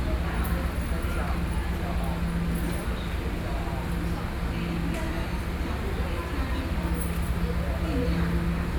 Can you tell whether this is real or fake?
real